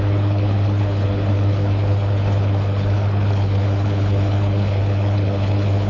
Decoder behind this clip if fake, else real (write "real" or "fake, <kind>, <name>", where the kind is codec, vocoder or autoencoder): fake, codec, HILCodec